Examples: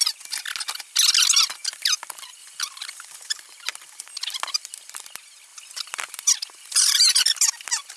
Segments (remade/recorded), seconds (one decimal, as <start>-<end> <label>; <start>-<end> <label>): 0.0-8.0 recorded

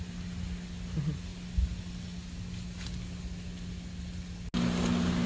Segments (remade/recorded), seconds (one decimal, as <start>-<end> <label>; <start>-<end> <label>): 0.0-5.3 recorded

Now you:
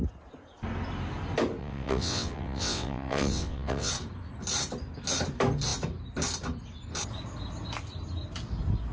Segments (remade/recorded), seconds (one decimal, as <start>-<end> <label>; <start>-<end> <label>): 0.0-1.6 recorded; 1.6-3.9 remade; 3.9-8.9 recorded

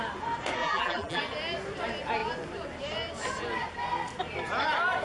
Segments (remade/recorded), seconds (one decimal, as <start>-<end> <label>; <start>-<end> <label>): 0.0-0.6 recorded; 0.6-1.2 remade; 1.2-5.0 recorded

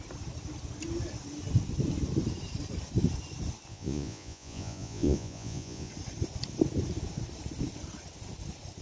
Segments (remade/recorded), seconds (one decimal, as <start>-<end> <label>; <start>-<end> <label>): 0.0-3.7 recorded; 3.7-5.9 remade; 5.9-8.8 recorded